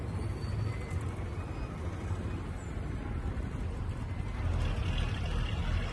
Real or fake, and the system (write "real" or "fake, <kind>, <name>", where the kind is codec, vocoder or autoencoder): real